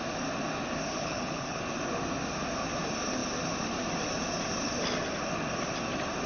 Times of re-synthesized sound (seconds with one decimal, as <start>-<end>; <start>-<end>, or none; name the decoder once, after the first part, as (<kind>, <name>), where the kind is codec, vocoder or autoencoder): 1.0-1.6 (codec, HILCodec)